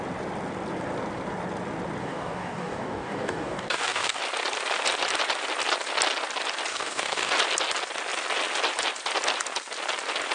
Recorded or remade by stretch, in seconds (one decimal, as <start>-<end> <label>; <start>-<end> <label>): 0.0-2.0 recorded; 2.0-4.2 remade; 4.2-6.7 recorded; 6.7-7.3 remade; 7.3-10.3 recorded